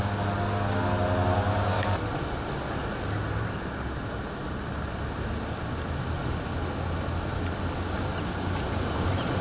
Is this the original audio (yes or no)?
yes